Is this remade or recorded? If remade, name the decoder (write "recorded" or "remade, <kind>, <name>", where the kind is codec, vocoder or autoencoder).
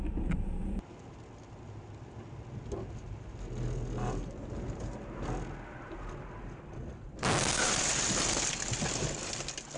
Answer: recorded